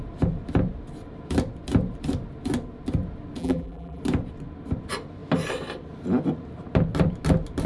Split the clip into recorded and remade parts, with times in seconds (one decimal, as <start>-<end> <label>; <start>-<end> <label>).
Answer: 0.0-3.4 recorded; 3.4-4.0 remade; 4.0-7.7 recorded